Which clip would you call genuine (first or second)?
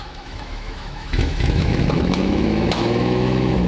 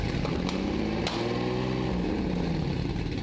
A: second